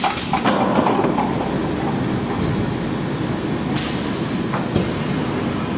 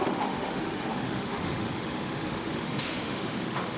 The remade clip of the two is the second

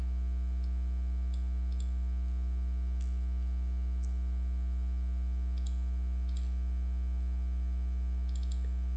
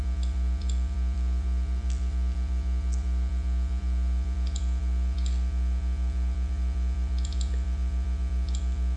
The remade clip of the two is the second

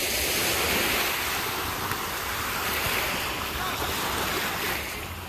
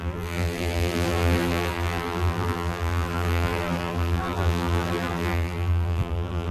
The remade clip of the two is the second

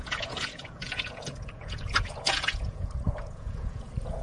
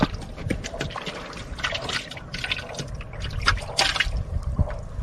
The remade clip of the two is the first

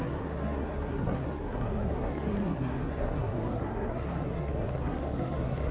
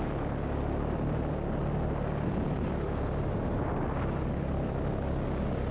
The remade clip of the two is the first